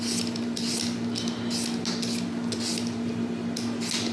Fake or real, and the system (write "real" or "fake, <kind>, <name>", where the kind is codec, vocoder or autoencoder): real